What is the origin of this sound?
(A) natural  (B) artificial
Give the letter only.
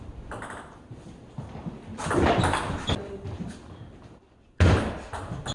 A